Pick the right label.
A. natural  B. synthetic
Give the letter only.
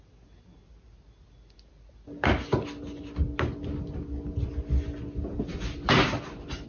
A